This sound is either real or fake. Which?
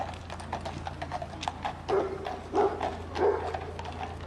real